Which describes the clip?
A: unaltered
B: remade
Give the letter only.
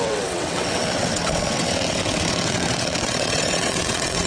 B